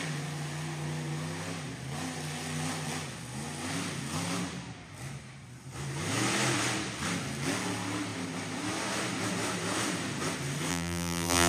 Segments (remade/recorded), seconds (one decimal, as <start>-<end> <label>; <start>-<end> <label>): 0.0-10.7 recorded; 10.7-11.5 remade